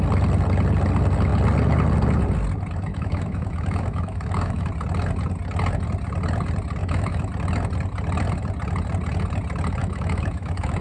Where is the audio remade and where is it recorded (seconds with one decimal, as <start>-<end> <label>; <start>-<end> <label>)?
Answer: 0.0-2.9 recorded; 2.9-4.7 remade; 4.7-6.8 recorded; 6.8-7.3 remade; 7.3-9.8 recorded; 9.8-10.8 remade